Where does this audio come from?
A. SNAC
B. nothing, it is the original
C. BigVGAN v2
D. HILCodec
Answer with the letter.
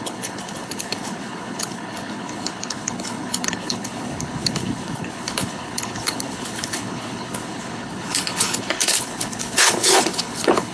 D